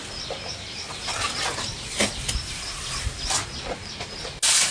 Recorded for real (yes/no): yes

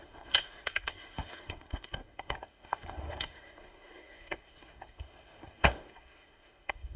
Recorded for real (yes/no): no